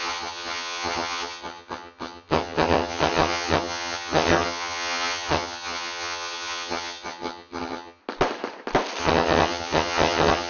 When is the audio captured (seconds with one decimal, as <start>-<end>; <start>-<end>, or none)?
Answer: 8.0-9.0